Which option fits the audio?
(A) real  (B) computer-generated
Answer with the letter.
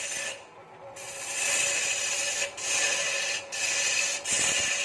A